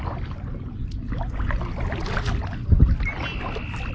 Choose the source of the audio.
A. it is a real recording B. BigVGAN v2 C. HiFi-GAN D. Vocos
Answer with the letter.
A